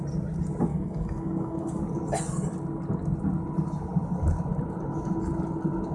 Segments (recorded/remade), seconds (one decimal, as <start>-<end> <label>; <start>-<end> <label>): 0.0-0.7 recorded; 0.7-1.8 remade; 1.8-5.9 recorded